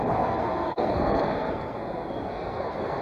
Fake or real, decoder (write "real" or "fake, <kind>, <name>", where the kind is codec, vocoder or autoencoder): fake, codec, SNAC